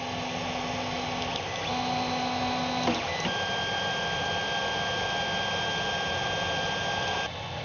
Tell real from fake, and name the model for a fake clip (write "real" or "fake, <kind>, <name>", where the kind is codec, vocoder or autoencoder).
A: real